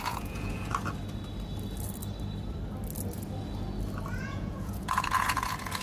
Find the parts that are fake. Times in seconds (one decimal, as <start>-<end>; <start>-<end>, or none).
0.0-0.7; 4.2-5.8